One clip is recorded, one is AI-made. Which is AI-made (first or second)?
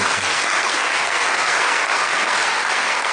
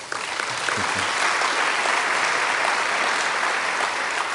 first